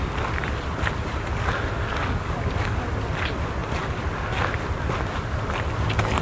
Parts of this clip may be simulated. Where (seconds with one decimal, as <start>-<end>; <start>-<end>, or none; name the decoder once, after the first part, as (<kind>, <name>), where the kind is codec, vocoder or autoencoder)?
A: 1.9-2.8 (codec, DAC)